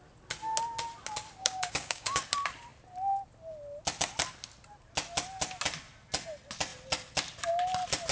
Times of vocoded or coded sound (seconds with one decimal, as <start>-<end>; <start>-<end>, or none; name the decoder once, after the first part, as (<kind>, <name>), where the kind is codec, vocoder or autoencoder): 1.4-2.2 (codec, DAC)